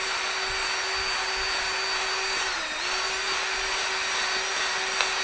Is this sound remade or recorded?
recorded